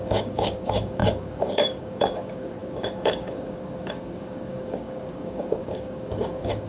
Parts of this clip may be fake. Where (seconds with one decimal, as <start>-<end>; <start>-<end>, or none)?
0.0-6.7